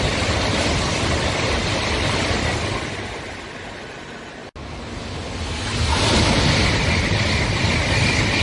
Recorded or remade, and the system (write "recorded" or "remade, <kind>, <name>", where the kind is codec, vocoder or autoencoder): recorded